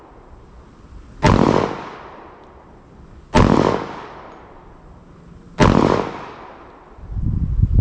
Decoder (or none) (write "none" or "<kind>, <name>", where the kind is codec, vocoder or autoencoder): none